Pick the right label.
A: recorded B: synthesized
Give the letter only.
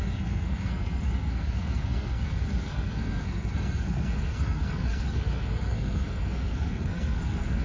B